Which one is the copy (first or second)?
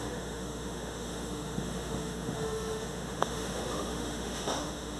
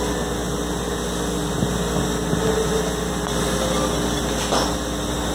first